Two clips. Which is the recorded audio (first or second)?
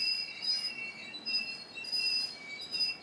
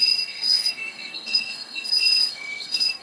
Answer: first